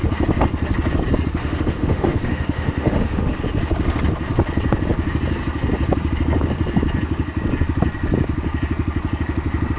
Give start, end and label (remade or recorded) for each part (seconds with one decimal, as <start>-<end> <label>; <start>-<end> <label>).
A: 0.0-1.4 recorded; 1.4-3.4 remade; 3.4-9.8 recorded